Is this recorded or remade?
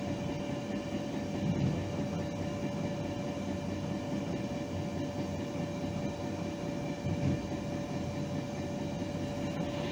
recorded